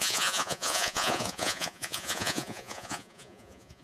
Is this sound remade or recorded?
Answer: remade